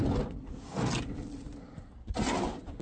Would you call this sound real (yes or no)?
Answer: yes